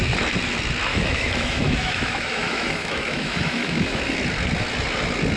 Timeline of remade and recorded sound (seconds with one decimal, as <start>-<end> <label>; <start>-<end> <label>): 0.0-0.9 recorded; 0.9-4.0 remade; 4.0-5.4 recorded